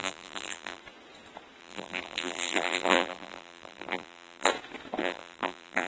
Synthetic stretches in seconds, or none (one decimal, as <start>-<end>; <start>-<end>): 0.0-0.8; 1.6-4.5; 5.0-5.9